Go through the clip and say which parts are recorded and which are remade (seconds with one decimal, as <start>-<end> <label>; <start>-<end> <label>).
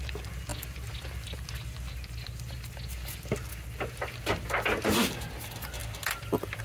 0.0-6.6 recorded